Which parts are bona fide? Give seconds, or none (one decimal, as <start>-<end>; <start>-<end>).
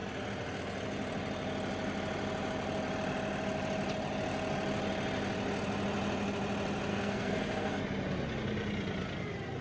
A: 0.0-6.9; 7.8-9.6